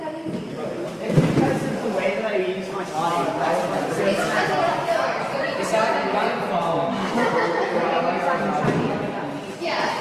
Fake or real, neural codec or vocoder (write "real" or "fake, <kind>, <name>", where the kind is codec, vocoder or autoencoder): fake, vocoder, BigVGAN v2